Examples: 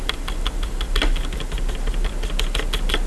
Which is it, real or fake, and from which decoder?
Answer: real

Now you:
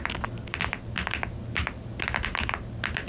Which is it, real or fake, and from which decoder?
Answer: real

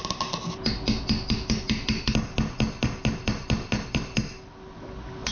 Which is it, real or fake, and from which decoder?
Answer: real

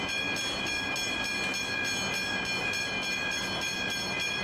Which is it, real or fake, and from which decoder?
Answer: real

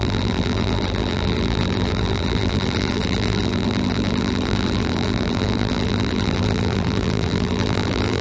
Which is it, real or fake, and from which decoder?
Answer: fake, vocoder, BigVGAN v2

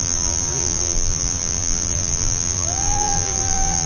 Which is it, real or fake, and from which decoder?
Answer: fake, vocoder, BigVGAN v2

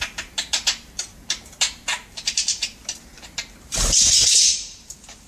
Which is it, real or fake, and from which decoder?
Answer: fake, vocoder, BigVGAN v2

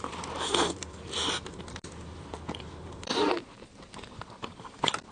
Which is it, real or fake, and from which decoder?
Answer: fake, vocoder, BigVGAN v2